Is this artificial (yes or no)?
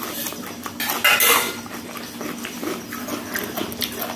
no